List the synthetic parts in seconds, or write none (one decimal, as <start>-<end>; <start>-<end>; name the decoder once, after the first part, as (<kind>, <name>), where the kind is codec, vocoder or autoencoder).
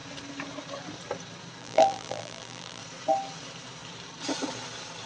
1.6-2.8 (vocoder, BigVGAN v2)